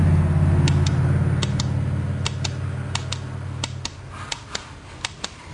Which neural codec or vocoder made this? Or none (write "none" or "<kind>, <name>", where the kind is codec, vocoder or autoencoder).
none